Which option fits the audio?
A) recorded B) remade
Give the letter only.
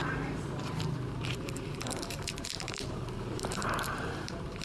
B